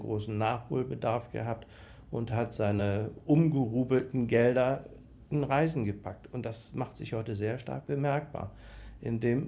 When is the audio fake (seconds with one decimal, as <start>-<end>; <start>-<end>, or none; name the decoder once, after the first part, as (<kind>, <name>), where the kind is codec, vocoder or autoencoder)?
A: none